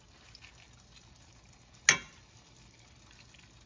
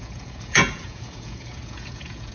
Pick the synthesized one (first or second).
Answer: second